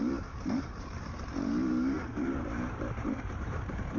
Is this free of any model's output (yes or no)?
no